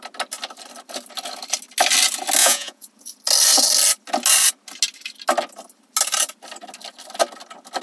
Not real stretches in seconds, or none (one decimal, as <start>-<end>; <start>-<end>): 2.4-2.9